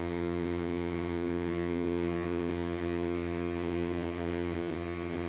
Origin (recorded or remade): remade